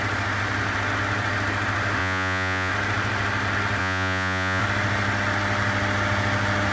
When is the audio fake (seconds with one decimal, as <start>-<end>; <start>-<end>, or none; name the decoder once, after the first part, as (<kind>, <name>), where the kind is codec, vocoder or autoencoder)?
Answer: 2.0-2.7 (vocoder, Vocos); 3.8-4.6